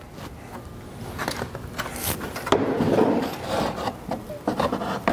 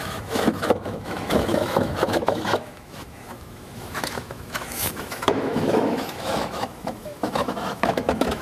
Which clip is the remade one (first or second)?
second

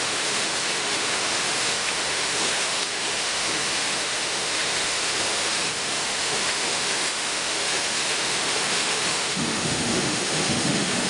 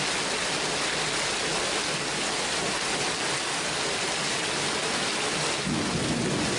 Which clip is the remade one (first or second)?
first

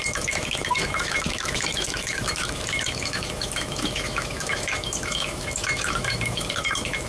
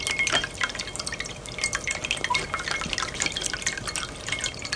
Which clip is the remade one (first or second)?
first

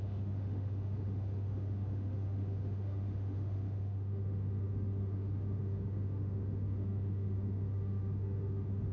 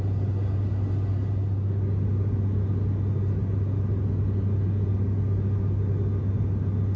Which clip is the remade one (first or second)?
first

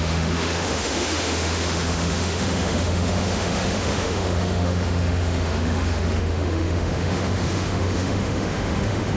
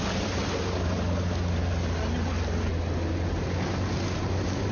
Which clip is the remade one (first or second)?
first